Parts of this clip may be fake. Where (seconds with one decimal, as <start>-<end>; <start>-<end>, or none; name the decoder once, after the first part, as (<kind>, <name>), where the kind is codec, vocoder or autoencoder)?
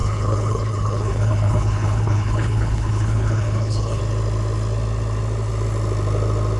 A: 0.0-4.0 (codec, HILCodec)